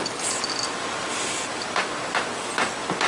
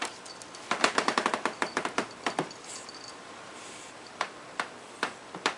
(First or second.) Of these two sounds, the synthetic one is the second